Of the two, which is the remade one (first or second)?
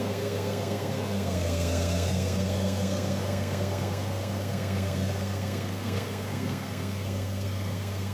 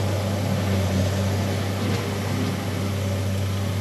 first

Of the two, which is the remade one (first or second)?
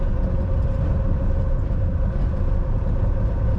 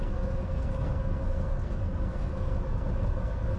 second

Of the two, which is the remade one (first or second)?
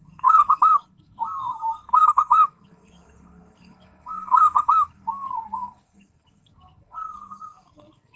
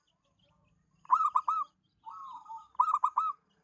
first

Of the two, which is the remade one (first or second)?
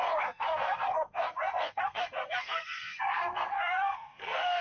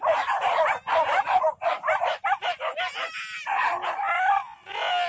first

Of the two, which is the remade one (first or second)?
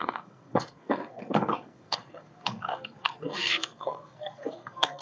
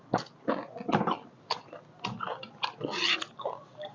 first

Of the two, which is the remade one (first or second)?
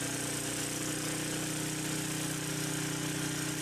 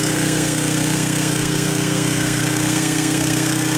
second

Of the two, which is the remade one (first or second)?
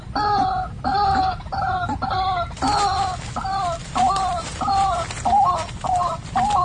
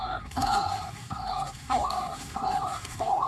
second